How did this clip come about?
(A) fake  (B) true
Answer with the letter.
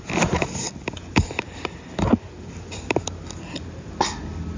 B